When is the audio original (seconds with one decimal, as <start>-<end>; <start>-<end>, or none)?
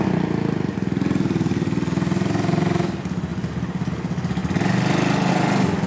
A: 0.0-5.9